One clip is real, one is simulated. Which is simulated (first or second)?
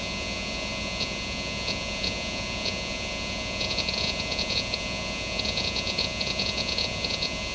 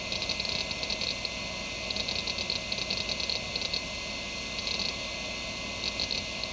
first